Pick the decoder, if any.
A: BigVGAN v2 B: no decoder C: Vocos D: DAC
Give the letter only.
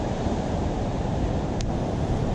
A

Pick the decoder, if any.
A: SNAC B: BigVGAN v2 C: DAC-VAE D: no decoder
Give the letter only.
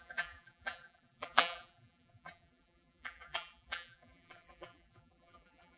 B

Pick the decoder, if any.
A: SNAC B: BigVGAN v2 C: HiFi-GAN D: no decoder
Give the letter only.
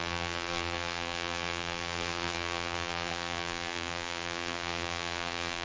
B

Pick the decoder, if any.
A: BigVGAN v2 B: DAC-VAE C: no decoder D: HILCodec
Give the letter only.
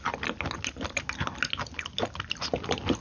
C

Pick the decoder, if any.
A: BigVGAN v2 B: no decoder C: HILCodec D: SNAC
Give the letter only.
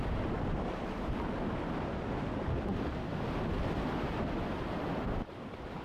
B